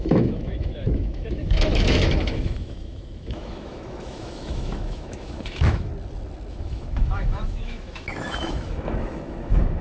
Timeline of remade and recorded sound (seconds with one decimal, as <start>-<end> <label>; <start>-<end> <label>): 0.0-5.9 remade; 5.9-6.5 recorded; 6.5-9.8 remade